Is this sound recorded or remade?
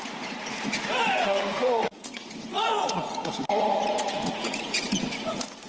remade